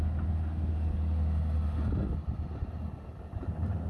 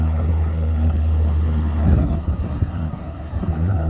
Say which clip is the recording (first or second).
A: first